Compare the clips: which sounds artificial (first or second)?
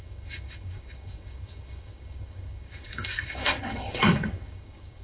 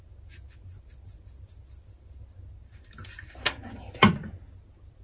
first